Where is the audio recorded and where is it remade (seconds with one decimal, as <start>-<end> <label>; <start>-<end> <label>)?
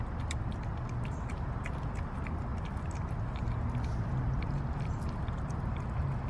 0.0-6.3 recorded